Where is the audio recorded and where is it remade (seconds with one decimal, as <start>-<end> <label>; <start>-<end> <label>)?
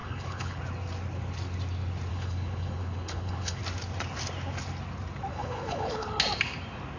0.0-0.6 remade; 0.6-2.1 recorded; 2.1-3.6 remade; 3.6-5.3 recorded; 5.3-6.2 remade; 6.2-7.0 recorded